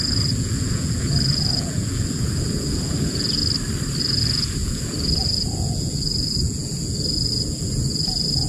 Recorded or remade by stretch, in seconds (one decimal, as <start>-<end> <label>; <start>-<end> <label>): 0.0-3.4 remade; 3.4-4.0 recorded; 4.0-8.5 remade

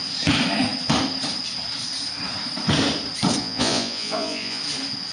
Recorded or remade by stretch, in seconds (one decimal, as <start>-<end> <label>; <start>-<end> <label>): 0.0-3.4 recorded; 3.4-4.6 remade; 4.6-5.1 recorded